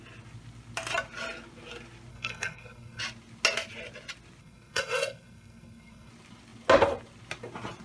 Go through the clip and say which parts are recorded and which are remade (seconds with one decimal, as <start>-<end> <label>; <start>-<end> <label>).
0.0-2.1 recorded; 2.1-3.0 remade; 3.0-4.4 recorded; 4.4-6.1 remade; 6.1-7.8 recorded